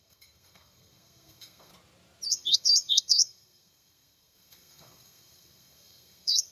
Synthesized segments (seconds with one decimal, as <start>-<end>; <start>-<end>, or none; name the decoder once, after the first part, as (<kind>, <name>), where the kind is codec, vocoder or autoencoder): 0.0-1.7 (codec, SNAC); 2.3-6.5